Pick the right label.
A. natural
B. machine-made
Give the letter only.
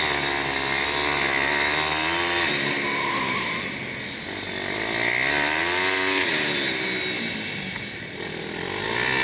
A